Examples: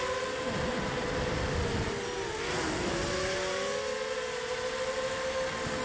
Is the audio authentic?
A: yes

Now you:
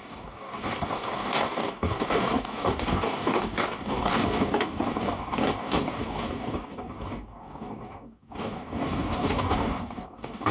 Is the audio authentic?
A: no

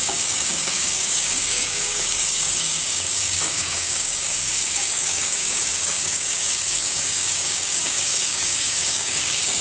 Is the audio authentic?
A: no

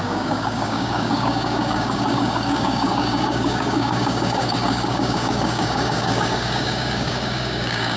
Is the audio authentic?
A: no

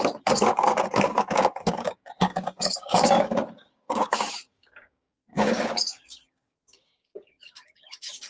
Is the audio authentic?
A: no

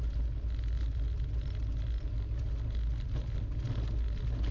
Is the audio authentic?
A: yes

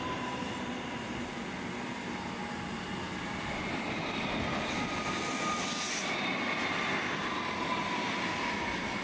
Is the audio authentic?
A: yes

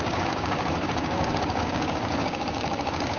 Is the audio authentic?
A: no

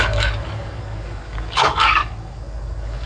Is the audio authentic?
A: no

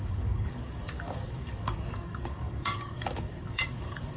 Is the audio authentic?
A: no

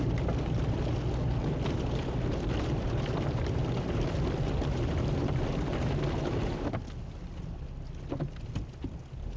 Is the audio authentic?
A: yes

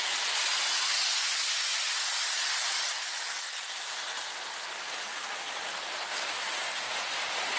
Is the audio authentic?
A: yes